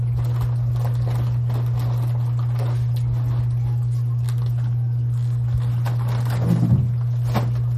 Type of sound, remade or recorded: recorded